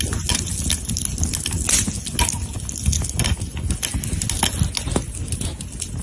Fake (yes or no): no